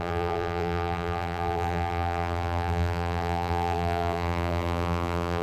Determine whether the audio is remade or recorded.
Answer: remade